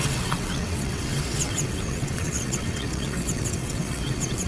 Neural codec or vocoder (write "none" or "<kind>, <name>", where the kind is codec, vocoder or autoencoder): vocoder, WaveNeXt